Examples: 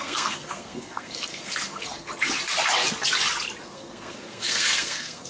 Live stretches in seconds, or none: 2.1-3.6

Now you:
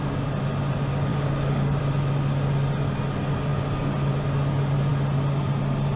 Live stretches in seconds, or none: 0.0-1.1; 1.8-6.0

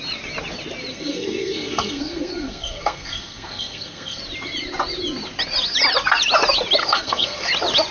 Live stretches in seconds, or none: 0.0-0.9; 4.2-6.8; 7.5-7.9